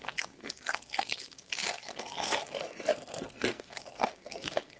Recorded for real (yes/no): no